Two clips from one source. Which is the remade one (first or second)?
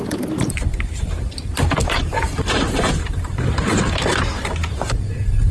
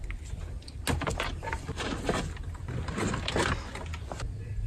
first